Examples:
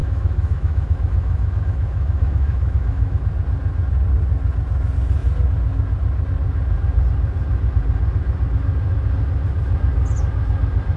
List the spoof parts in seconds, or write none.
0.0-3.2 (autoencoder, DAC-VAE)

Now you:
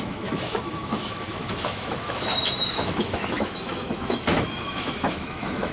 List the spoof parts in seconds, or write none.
0.0-5.7 (autoencoder, DAC-VAE)

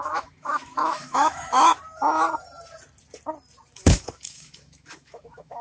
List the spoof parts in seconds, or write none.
0.0-1.7 (autoencoder, DAC-VAE); 3.7-5.6

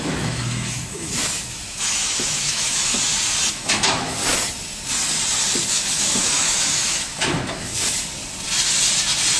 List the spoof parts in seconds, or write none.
0.0-2.9 (autoencoder, DAC-VAE); 3.5-4.2; 5.7-7.7

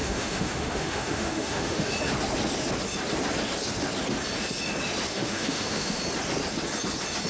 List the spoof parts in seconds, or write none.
0.0-1.9 (autoencoder, DAC-VAE); 5.1-6.0

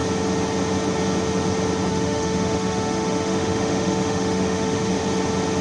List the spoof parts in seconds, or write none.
1.9-4.9 (autoencoder, DAC-VAE)

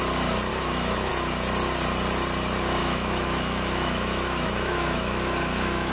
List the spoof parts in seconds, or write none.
0.5-1.1 (autoencoder, DAC-VAE); 2.8-5.9